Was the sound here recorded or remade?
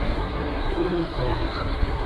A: remade